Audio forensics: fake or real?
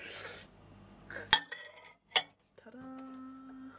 real